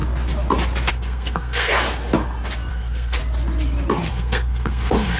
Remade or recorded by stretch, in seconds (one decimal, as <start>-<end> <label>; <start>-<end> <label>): 0.0-0.9 recorded; 0.9-1.7 remade; 1.7-2.7 recorded; 2.7-3.2 remade; 3.2-4.1 recorded; 4.1-5.2 remade